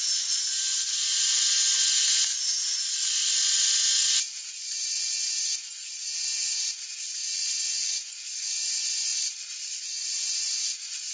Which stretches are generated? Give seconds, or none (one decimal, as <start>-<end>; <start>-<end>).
none